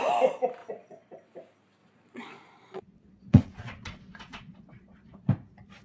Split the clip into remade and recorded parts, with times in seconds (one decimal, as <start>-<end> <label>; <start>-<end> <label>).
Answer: 0.0-0.6 recorded; 0.6-1.1 remade; 1.1-1.8 recorded; 1.8-5.3 remade; 5.3-5.8 recorded